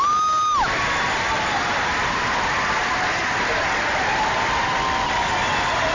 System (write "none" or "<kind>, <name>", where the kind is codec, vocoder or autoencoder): none